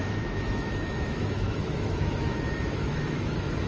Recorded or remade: remade